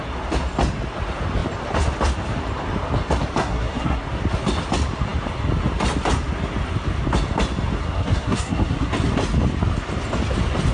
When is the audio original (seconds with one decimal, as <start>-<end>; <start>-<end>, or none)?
0.0-3.4; 4.0-7.8; 8.9-10.7